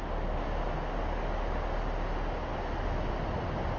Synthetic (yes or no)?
no